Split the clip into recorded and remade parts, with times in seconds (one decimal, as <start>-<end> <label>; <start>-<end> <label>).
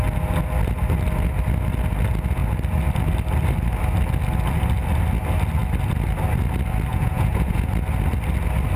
0.0-6.9 recorded; 6.9-7.7 remade; 7.7-8.8 recorded